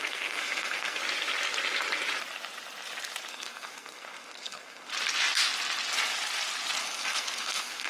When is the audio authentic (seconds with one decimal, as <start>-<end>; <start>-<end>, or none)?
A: 1.0-3.3; 4.9-6.8